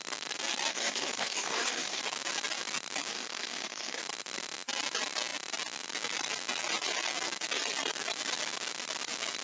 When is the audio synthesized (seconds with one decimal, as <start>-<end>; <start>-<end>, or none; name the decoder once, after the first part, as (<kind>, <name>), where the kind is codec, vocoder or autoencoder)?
0.7-2.0 (codec, DAC); 3.1-4.0